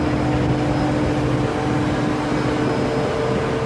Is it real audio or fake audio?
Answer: real